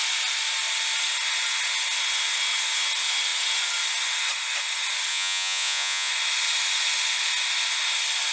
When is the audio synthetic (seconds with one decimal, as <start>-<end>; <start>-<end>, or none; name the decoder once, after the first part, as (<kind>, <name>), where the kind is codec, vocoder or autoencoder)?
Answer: 5.1-6.1 (vocoder, Vocos)